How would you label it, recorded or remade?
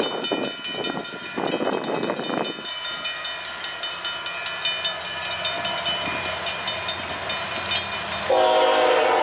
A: recorded